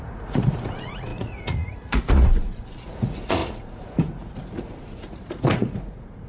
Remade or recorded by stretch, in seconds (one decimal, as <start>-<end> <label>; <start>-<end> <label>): 0.0-6.3 remade